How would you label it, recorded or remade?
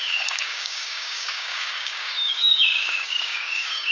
remade